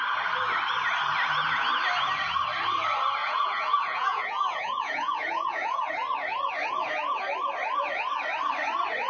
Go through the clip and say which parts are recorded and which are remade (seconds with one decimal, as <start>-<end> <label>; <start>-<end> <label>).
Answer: 0.0-3.2 recorded; 3.2-5.9 remade; 5.9-9.1 recorded